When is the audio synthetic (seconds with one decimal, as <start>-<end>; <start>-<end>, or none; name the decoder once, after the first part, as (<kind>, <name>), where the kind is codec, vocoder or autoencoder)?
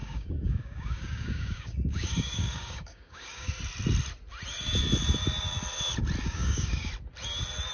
0.0-3.5 (codec, DAC); 6.2-6.9